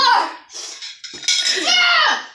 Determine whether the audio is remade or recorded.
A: recorded